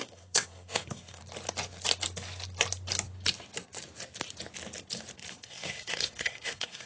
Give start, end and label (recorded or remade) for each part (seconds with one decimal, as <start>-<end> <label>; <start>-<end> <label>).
0.0-1.2 remade; 1.2-5.3 recorded; 5.3-6.9 remade